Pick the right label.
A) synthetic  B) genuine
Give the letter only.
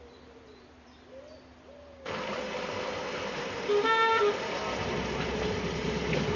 B